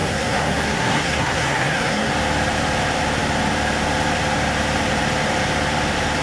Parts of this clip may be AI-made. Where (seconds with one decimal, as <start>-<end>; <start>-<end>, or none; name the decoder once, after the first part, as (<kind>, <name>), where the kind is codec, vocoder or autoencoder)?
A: 0.0-2.1 (codec, SNAC)